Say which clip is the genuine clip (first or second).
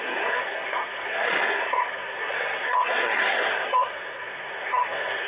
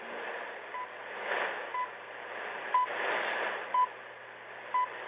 second